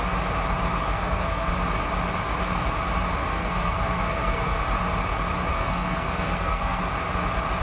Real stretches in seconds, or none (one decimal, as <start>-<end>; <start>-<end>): 0.0-0.9; 1.5-3.2; 4.6-5.5; 6.8-7.6